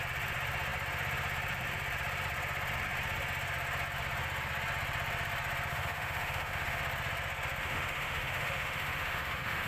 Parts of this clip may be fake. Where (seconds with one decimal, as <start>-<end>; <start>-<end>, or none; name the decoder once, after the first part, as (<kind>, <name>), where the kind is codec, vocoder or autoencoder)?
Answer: 5.7-6.8 (autoencoder, DAC-VAE); 7.6-9.7